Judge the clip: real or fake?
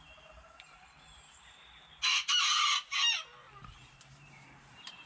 real